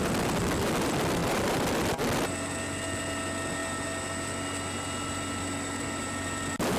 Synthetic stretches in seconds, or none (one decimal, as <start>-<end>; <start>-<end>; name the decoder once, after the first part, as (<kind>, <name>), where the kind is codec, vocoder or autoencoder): 1.2-1.7 (vocoder, BigVGAN v2)